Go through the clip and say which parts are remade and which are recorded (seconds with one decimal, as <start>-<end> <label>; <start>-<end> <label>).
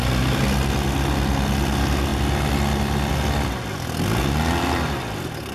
0.0-5.5 recorded